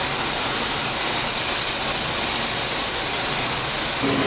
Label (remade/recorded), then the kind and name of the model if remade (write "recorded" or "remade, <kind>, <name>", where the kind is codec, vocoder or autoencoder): recorded